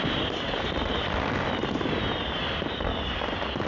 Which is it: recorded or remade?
recorded